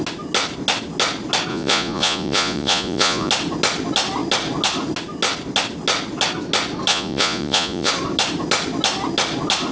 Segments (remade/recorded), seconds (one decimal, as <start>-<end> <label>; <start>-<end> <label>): 0.0-1.5 recorded; 1.5-3.3 remade; 3.3-6.9 recorded; 6.9-7.9 remade; 7.9-9.7 recorded